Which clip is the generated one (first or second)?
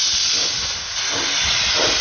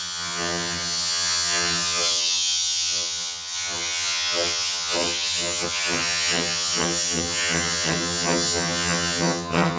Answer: second